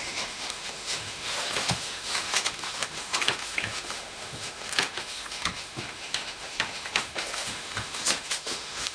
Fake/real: fake